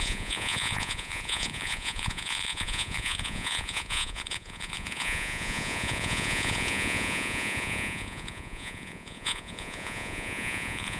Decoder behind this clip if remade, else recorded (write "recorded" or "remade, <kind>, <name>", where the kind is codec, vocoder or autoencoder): remade, vocoder, Vocos